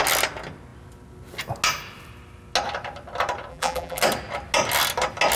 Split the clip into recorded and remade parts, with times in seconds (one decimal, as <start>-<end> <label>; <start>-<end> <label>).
0.0-3.5 recorded; 3.5-4.0 remade; 4.0-5.4 recorded